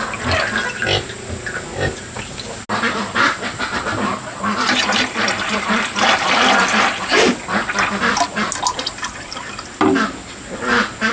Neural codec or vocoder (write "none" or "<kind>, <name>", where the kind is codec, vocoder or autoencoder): none